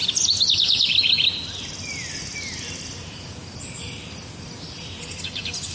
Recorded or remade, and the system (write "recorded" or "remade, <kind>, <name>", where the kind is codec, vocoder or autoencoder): recorded